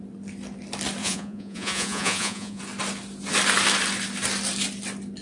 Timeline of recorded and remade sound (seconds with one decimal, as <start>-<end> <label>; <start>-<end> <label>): 0.0-1.0 recorded; 1.0-2.6 remade; 2.6-5.2 recorded